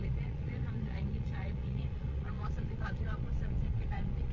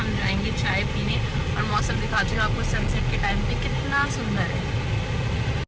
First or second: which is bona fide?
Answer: second